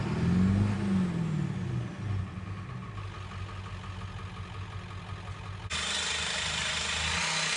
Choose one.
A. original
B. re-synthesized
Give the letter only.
A